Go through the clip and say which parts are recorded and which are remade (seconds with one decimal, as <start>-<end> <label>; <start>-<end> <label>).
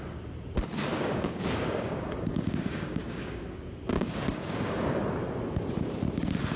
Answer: 0.0-0.9 recorded; 0.9-4.8 remade; 4.8-6.6 recorded